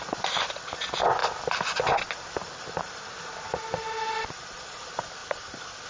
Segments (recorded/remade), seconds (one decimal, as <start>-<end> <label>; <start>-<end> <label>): 0.0-5.9 recorded